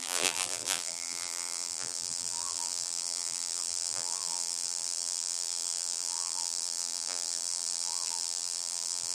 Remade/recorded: remade